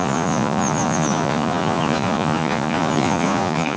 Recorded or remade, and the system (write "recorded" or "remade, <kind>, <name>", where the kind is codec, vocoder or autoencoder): remade, vocoder, Vocos